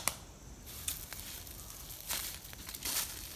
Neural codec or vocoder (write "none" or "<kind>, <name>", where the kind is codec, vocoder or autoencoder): none